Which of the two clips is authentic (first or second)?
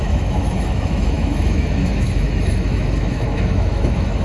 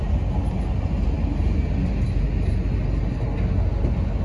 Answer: second